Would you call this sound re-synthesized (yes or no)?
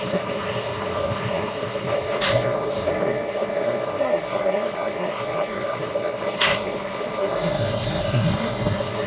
yes